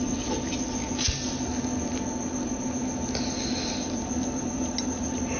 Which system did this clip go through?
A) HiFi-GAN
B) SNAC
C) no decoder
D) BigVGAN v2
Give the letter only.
C